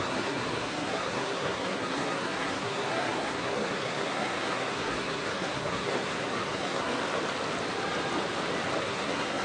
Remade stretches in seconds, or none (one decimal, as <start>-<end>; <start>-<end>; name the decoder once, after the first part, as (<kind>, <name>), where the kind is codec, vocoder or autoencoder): 0.0-7.0 (codec, SNAC); 8.8-9.4